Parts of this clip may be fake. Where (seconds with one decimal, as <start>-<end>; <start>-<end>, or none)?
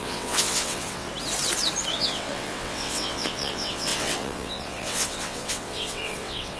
0.0-1.1; 1.9-6.6